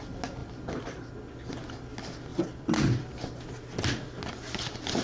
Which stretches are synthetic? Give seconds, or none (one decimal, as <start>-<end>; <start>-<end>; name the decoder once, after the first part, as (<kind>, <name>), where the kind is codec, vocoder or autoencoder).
0.4-1.1 (vocoder, BigVGAN v2); 2.3-3.1